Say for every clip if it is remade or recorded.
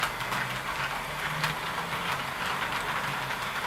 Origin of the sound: recorded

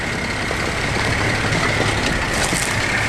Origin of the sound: recorded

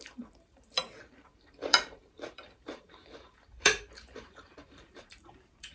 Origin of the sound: remade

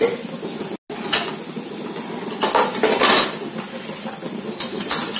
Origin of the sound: recorded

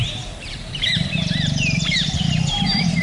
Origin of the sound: remade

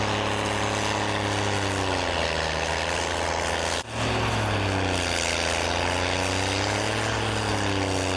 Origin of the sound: recorded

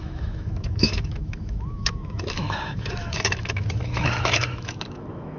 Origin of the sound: remade